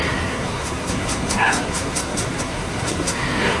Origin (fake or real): fake